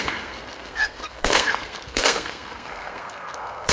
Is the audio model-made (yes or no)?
yes